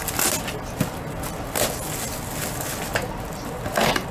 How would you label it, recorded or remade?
recorded